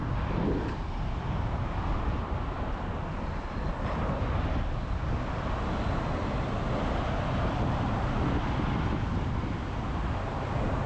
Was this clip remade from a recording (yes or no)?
no